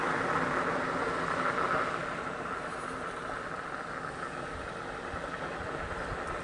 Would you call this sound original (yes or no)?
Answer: yes